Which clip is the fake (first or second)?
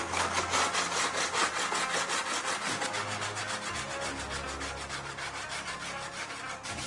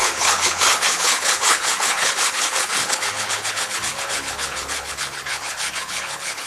second